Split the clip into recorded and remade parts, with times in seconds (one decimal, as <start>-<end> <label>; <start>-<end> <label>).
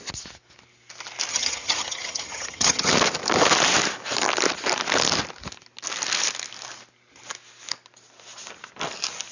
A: 0.0-1.3 recorded; 1.3-2.9 remade; 2.9-9.3 recorded